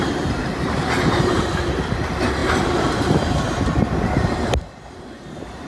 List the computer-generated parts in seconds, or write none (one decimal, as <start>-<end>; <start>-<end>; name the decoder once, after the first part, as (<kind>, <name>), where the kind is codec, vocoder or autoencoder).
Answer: 0.4-1.4 (vocoder, BigVGAN v2)